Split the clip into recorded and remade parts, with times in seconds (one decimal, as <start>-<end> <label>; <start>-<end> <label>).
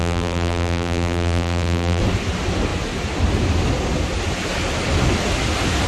0.0-2.0 remade; 2.0-5.9 recorded